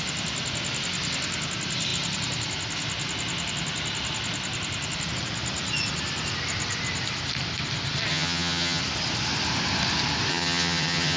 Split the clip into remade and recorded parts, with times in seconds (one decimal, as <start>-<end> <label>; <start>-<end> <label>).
0.0-8.1 recorded; 8.1-8.8 remade; 8.8-10.3 recorded; 10.3-11.2 remade